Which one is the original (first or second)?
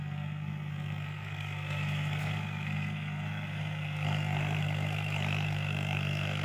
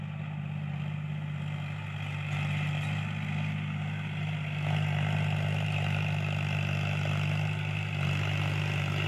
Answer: second